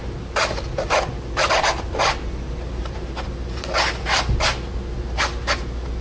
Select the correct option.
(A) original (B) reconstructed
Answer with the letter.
A